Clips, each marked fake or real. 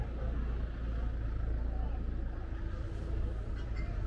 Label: real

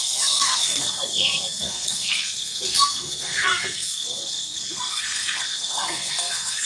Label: fake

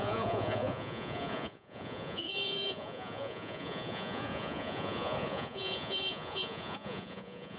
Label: fake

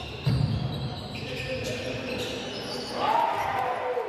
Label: real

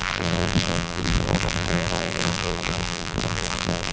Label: fake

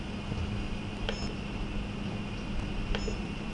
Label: real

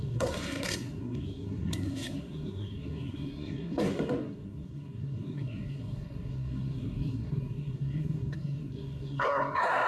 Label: fake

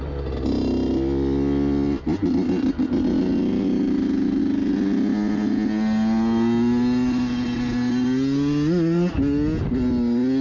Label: real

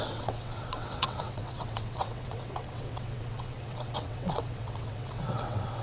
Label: fake